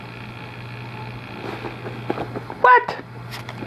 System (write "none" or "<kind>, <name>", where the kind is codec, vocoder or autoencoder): none